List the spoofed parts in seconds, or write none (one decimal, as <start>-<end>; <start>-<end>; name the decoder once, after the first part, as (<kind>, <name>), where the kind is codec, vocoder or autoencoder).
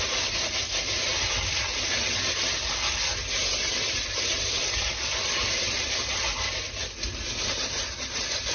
3.5-7.6 (vocoder, BigVGAN v2)